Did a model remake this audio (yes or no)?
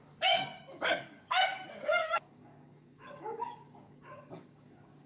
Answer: yes